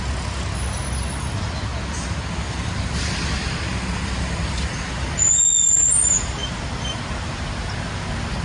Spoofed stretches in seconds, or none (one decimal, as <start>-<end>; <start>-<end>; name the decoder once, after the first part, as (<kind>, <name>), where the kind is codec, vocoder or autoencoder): none